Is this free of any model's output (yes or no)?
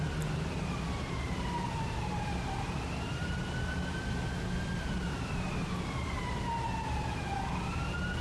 yes